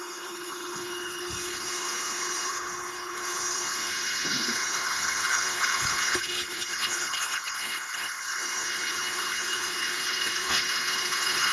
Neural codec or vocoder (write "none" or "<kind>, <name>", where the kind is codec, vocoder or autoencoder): codec, HILCodec